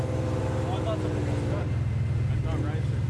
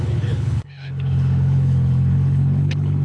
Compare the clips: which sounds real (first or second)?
first